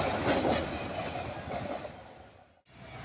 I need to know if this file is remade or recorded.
recorded